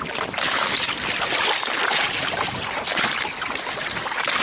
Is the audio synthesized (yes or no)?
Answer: no